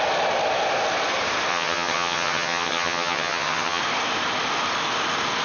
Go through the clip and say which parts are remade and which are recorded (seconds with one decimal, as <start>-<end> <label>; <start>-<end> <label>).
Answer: 0.0-1.5 recorded; 1.5-3.8 remade; 3.8-5.4 recorded